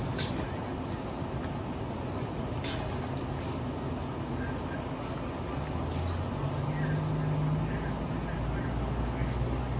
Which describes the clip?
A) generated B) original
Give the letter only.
B